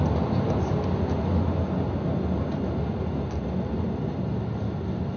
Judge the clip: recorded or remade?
recorded